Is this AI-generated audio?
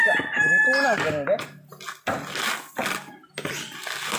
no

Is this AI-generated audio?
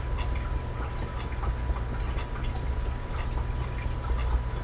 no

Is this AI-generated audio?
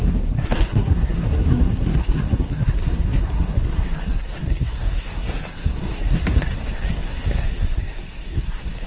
yes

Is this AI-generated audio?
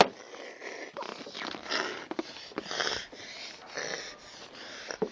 no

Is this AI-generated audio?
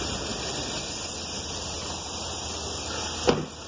no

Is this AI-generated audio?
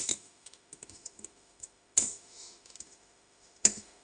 yes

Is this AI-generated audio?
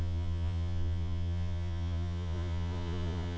yes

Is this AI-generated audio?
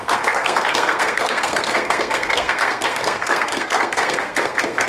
yes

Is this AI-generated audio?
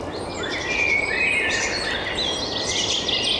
no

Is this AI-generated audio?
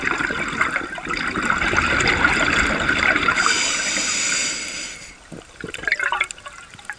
no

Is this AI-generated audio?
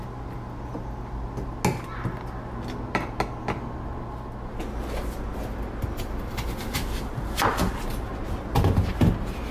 no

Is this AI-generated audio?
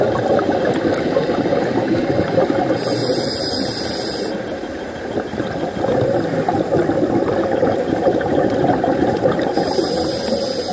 no